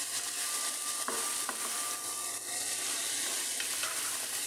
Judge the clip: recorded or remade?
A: recorded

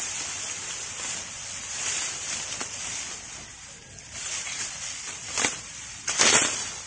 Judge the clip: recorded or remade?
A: remade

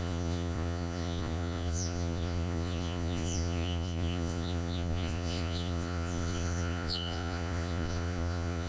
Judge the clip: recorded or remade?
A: remade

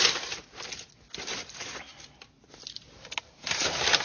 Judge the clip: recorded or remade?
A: recorded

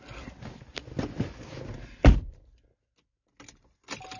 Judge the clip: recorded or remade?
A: recorded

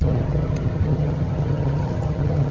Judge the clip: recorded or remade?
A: remade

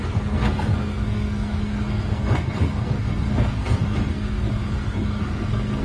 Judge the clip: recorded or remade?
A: remade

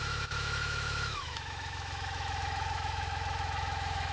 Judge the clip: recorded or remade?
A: remade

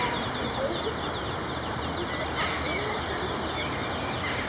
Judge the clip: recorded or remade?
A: recorded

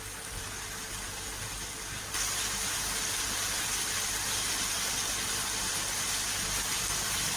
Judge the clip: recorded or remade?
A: recorded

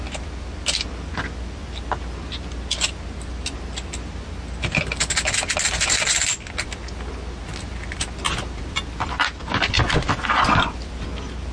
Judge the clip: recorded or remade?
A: recorded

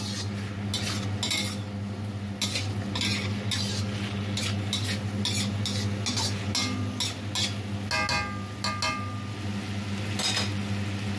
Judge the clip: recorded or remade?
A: recorded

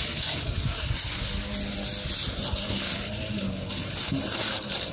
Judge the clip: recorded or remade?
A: recorded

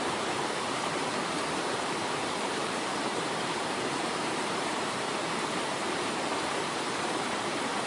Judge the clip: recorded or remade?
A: remade